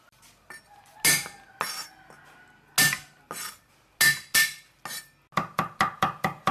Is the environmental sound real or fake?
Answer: real